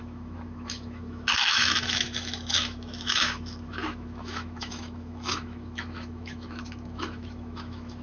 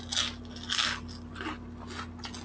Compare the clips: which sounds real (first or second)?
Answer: second